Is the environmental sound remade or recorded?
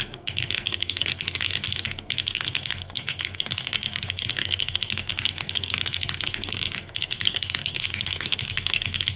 remade